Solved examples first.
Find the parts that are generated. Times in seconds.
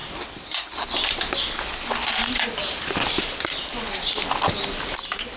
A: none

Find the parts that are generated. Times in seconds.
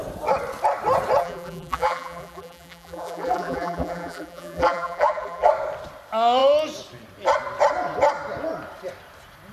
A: 1.2-5.5 (vocoder, BigVGAN v2)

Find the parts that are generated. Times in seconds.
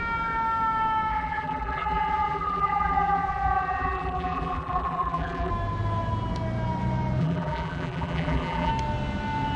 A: 1.1-5.5 (vocoder, BigVGAN v2); 7.2-8.7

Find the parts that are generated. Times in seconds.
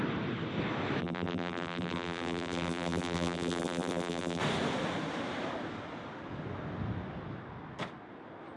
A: 1.0-4.4 (vocoder, BigVGAN v2)